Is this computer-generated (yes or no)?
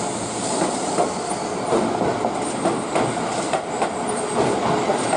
no